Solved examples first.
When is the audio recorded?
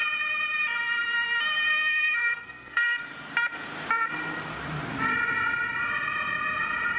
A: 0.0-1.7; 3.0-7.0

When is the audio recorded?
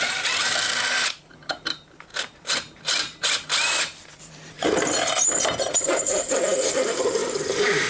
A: none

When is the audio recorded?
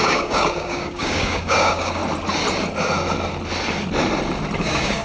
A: 2.0-4.6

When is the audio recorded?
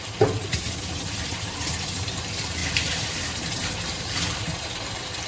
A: 0.0-2.6; 4.7-5.3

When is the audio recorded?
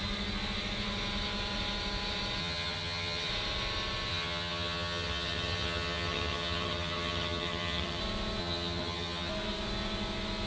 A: 0.0-2.4; 3.3-4.1; 8.0-8.4; 9.3-10.5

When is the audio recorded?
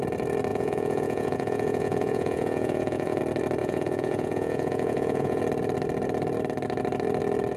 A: 0.0-0.5; 3.2-3.6; 5.4-7.6